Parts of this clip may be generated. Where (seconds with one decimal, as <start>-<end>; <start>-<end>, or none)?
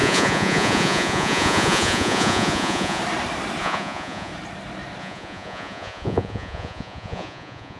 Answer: 0.0-3.0; 3.6-4.3; 5.0-7.8